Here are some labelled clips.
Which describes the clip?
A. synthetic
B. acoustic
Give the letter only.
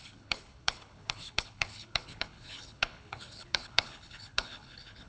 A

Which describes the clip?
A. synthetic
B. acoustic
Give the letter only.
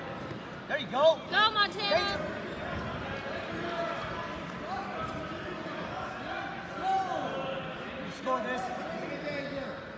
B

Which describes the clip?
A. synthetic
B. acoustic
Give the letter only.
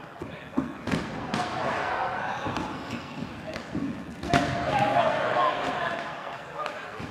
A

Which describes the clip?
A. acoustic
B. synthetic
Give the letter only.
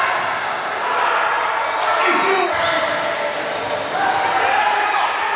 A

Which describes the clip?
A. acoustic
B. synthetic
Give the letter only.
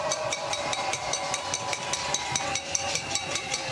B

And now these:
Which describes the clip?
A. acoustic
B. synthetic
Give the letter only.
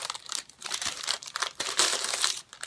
B